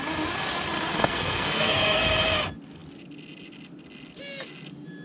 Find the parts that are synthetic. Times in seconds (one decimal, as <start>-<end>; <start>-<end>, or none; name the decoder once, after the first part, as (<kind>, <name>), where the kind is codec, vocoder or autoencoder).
0.9-2.0 (codec, SNAC)